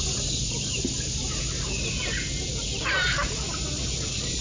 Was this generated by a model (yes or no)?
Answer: no